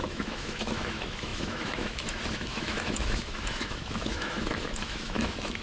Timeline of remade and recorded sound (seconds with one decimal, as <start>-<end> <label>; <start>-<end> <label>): 0.0-5.6 remade